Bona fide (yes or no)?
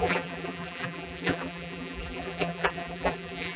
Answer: no